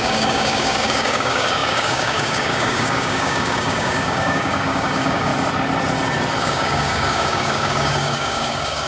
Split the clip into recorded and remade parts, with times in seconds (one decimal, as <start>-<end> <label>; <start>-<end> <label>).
0.0-5.3 remade; 5.3-6.4 recorded; 6.4-8.9 remade